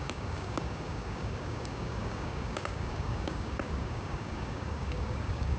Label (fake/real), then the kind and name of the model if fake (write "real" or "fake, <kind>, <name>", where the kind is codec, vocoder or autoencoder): fake, codec, DAC